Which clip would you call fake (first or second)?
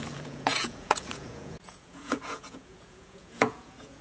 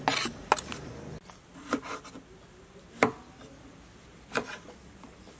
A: first